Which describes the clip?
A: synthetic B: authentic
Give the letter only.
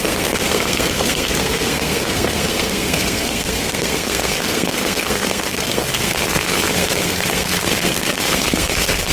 A